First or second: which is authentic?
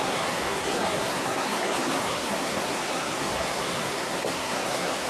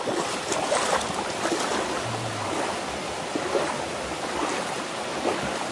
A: second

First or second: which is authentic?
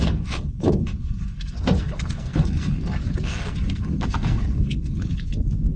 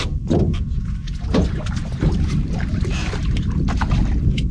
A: second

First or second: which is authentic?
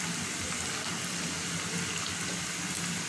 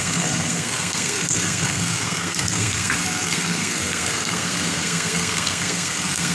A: first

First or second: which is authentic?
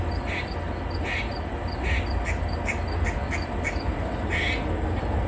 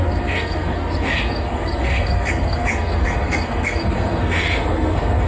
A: first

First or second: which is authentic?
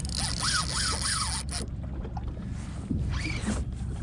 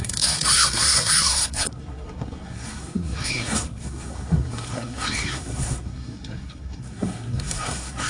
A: first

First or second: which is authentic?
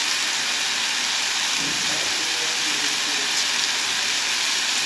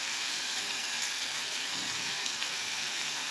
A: first